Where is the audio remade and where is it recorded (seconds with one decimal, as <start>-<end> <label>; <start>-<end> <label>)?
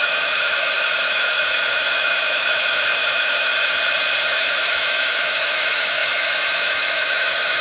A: 0.0-3.5 remade; 3.5-4.2 recorded; 4.2-7.6 remade